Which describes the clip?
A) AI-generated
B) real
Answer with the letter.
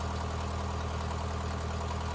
B